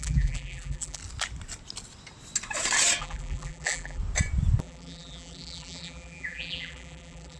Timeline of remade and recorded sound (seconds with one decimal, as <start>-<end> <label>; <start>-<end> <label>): 0.0-1.0 remade; 1.0-3.0 recorded; 3.0-4.0 remade; 4.0-4.6 recorded; 4.6-7.4 remade